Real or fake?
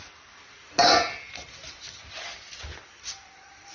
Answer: real